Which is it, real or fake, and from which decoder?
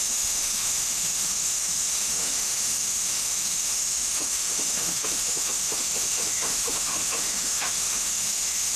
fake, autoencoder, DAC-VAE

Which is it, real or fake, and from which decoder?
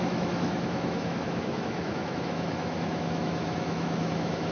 fake, autoencoder, DAC-VAE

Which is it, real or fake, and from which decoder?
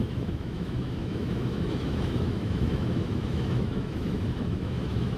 fake, autoencoder, DAC-VAE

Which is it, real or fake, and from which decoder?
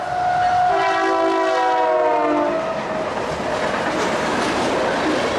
real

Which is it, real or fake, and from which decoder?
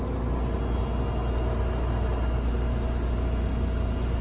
real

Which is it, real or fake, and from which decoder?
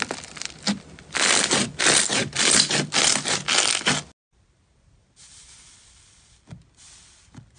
real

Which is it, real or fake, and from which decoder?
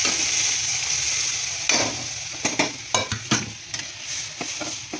real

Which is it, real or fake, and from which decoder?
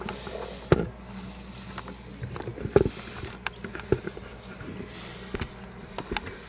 real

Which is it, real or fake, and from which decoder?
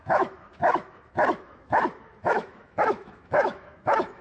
fake, autoencoder, DAC-VAE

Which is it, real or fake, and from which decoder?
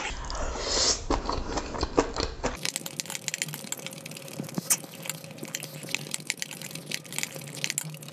real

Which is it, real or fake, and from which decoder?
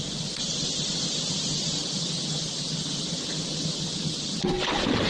real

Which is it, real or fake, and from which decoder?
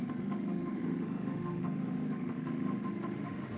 fake, autoencoder, DAC-VAE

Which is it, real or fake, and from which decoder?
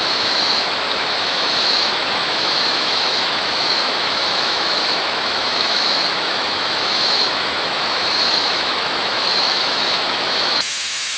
fake, autoencoder, DAC-VAE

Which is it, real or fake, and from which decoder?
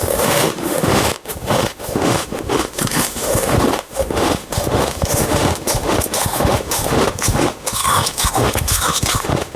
fake, autoencoder, DAC-VAE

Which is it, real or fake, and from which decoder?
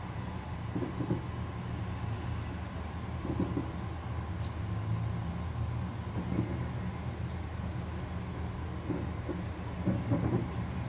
real